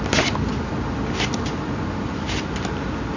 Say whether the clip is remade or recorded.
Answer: recorded